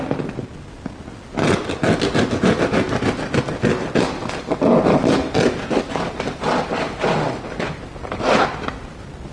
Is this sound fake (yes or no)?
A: no